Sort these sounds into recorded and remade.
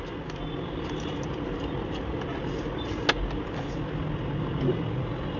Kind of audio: recorded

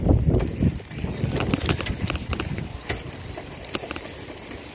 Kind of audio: recorded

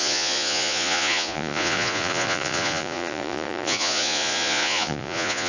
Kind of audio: remade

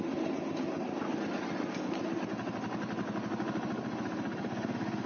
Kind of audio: recorded